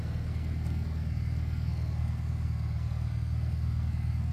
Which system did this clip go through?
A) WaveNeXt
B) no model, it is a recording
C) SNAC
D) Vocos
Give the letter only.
C